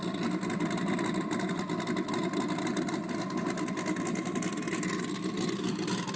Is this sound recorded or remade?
recorded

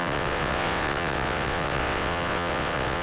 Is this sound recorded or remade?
remade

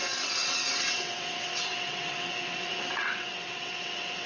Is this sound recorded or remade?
remade